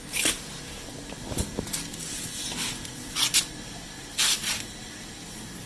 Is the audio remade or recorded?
recorded